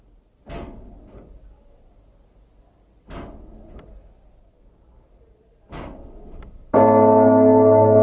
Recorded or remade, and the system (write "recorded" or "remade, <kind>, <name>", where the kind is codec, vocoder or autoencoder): recorded